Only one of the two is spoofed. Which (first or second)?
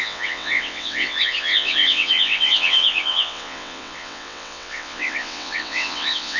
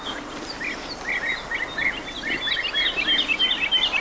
first